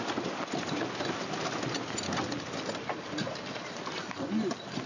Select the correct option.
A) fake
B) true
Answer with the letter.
B